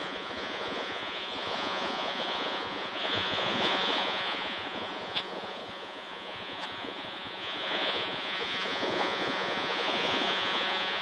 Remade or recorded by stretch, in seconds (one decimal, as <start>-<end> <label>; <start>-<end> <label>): 0.0-11.0 remade